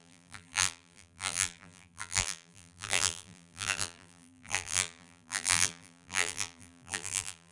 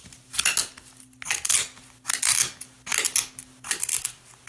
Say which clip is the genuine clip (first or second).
second